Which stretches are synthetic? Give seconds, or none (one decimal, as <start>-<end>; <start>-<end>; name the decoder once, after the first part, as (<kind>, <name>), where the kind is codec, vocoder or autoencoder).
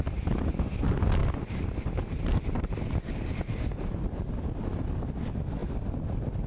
1.2-4.2 (vocoder, BigVGAN v2)